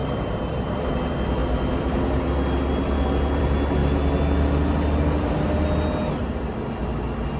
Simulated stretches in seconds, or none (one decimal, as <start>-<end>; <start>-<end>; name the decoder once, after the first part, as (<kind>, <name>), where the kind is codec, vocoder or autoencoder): 0.0-0.9 (vocoder, BigVGAN v2)